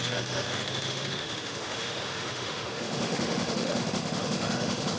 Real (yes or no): no